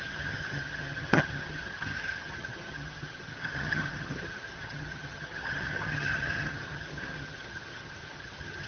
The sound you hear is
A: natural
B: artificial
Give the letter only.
B